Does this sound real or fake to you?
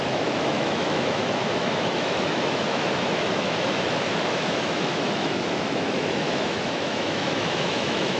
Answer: fake